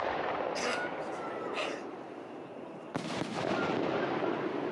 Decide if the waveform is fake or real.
real